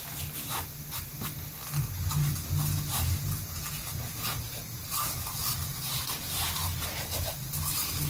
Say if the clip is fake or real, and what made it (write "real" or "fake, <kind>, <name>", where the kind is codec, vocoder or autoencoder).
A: real